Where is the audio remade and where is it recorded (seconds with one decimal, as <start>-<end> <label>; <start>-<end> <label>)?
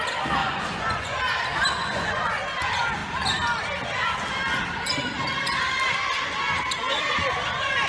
0.0-0.4 recorded; 0.4-1.2 remade; 1.2-1.8 recorded; 1.8-2.4 remade; 2.4-7.9 recorded